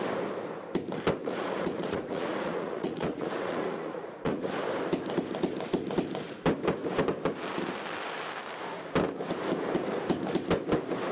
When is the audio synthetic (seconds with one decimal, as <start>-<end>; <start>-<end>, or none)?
1.2-4.5